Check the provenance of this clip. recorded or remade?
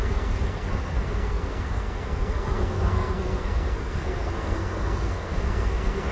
remade